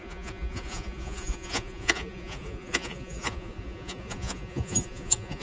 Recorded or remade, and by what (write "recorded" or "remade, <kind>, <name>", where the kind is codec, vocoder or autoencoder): remade, vocoder, Vocos